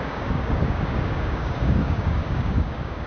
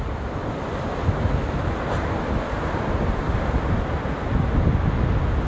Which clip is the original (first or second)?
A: second